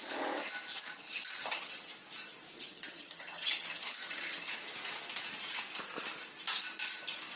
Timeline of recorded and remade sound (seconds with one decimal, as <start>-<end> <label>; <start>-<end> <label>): 0.0-0.7 recorded; 0.7-1.9 remade; 1.9-2.7 recorded; 2.7-4.5 remade; 4.5-7.4 recorded